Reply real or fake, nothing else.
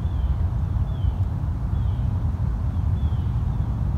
real